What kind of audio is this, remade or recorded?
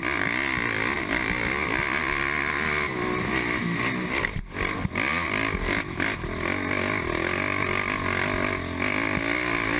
recorded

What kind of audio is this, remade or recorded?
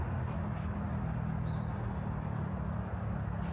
recorded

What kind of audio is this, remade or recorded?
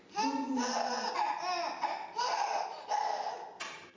recorded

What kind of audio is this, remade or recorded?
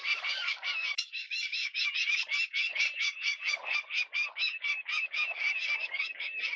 remade